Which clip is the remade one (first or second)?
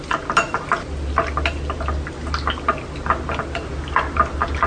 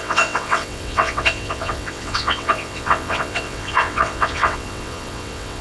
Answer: second